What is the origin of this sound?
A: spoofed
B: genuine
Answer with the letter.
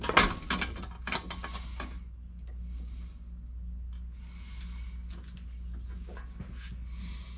B